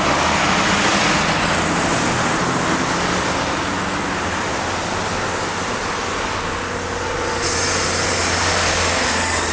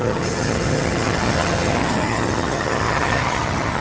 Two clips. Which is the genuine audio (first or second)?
first